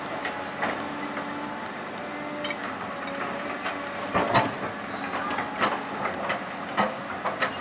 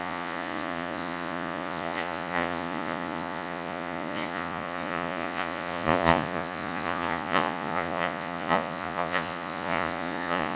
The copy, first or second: second